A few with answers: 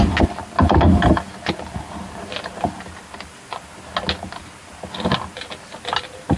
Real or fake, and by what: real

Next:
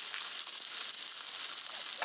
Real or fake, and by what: real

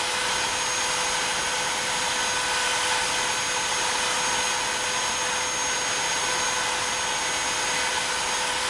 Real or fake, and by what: real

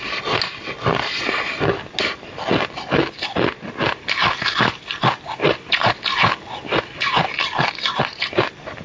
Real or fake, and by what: real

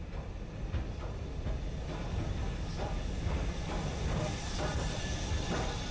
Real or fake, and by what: real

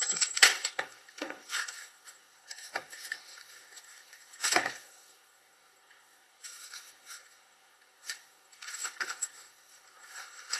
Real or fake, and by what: fake, codec, SNAC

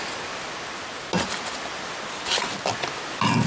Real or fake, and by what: real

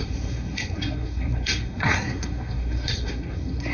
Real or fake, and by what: fake, codec, SNAC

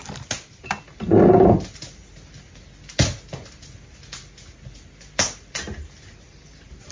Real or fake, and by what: real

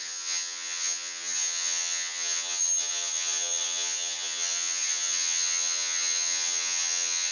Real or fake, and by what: fake, vocoder, HiFi-GAN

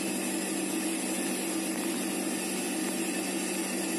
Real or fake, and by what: real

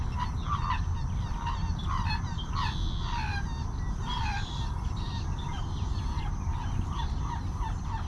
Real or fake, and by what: real